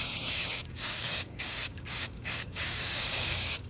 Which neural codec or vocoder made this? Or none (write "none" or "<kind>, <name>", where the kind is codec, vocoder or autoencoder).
codec, DAC